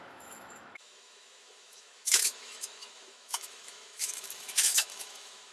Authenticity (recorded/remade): remade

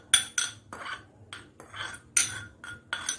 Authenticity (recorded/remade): recorded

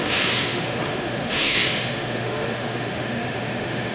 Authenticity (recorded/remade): remade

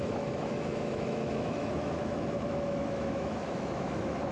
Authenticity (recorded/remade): remade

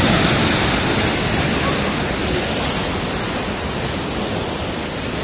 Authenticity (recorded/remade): recorded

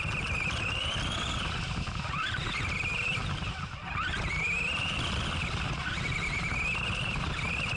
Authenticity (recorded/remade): recorded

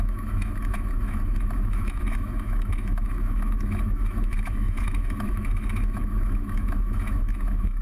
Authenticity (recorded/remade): remade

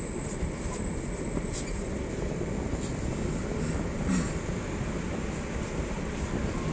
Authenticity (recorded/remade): recorded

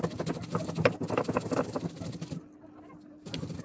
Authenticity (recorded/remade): recorded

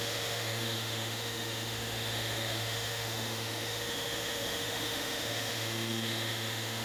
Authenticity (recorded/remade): remade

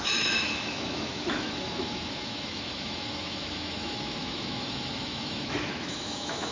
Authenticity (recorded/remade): remade